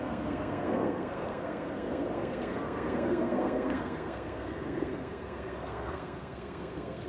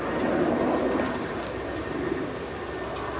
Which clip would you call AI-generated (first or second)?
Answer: first